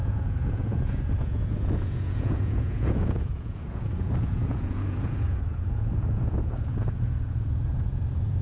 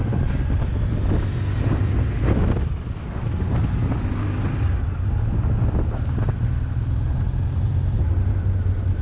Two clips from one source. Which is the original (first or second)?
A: second